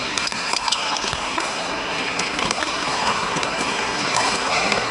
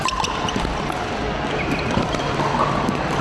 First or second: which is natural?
second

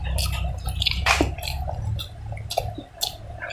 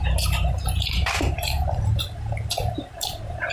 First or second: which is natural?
first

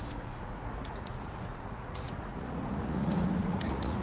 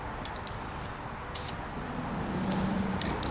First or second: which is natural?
second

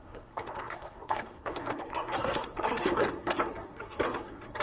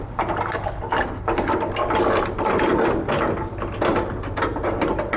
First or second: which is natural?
second